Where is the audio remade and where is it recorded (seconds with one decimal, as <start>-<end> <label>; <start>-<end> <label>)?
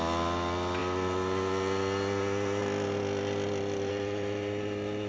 0.0-5.1 recorded